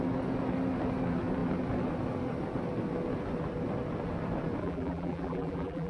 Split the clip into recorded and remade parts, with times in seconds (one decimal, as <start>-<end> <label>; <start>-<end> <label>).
0.0-4.6 recorded; 4.6-5.9 remade